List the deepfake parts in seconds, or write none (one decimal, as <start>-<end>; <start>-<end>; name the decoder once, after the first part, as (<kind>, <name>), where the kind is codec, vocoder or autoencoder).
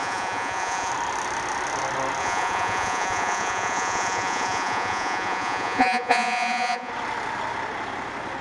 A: 0.0-0.9 (vocoder, Vocos); 2.2-6.9